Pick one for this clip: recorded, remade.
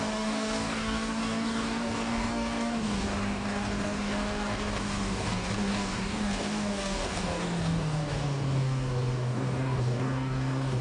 remade